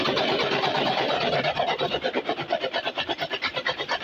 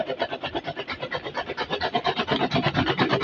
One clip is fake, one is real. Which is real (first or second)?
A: second